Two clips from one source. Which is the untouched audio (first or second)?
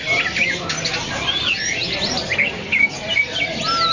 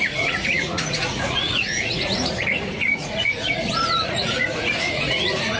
first